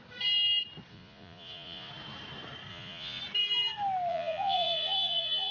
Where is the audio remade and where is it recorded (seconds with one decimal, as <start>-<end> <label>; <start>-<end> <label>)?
0.0-0.9 recorded; 0.9-1.9 remade; 1.9-2.7 recorded; 2.7-3.2 remade; 3.2-4.1 recorded; 4.1-5.5 remade